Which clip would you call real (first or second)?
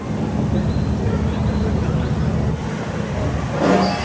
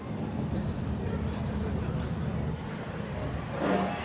first